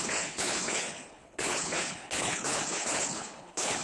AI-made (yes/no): yes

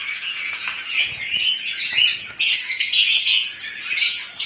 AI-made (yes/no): yes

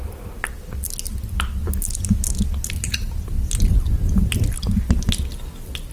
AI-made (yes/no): no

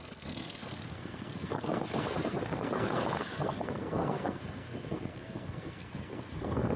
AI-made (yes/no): yes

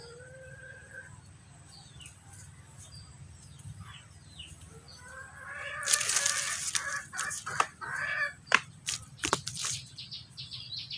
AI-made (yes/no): no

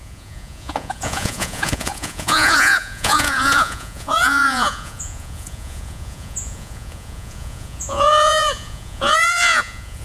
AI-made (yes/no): yes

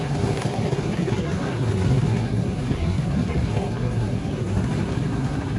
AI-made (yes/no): yes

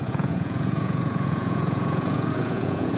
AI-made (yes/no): yes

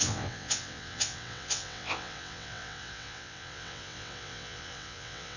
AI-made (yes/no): yes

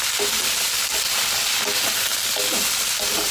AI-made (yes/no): no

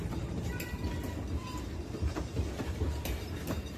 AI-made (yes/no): yes